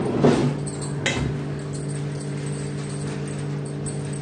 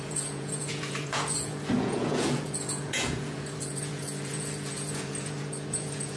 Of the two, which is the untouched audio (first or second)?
first